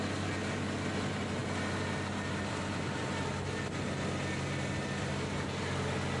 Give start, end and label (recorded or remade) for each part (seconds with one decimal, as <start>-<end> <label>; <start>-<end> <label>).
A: 0.0-6.2 recorded